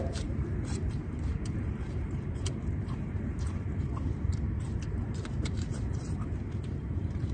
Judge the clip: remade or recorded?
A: remade